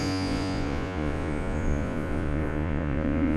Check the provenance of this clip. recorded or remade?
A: remade